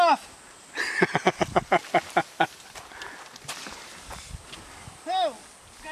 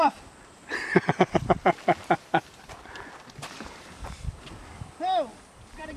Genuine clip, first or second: first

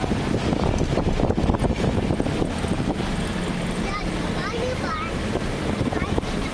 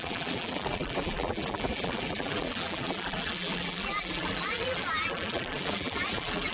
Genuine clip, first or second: first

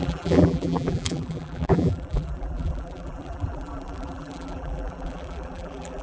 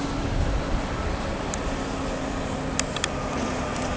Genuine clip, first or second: second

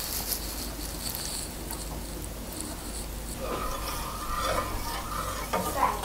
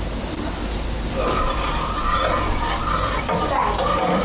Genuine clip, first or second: first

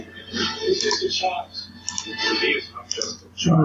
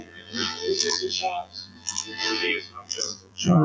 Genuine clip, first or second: first